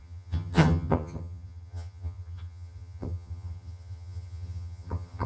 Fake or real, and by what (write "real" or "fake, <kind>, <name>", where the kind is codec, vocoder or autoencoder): fake, vocoder, HiFi-GAN